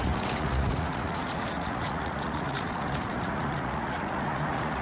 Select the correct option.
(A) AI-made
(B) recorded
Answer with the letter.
A